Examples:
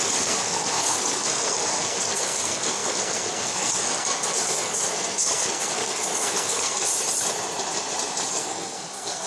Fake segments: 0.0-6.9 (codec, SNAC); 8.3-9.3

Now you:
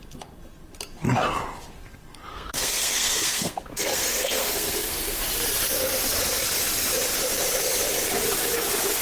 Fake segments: 2.3-5.2 (codec, SNAC)

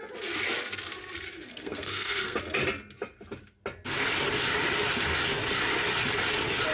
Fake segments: 1.5-2.4 (codec, SNAC)

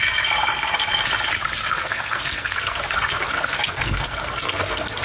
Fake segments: 1.7-5.0 (codec, SNAC)

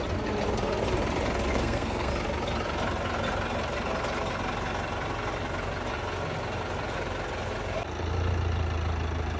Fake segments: 1.5-2.1 (codec, SNAC)

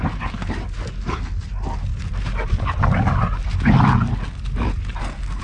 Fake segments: none

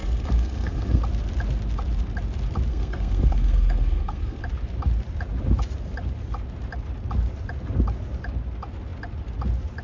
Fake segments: 0.0-1.0 (codec, SNAC); 2.7-4.4